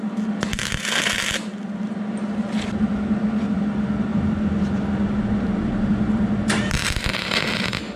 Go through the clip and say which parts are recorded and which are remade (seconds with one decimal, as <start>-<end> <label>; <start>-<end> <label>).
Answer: 0.0-4.1 recorded; 4.1-6.9 remade; 6.9-8.0 recorded